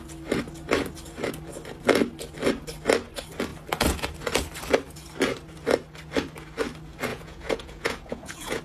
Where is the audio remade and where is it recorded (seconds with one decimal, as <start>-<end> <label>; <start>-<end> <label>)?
0.0-7.1 recorded; 7.1-8.6 remade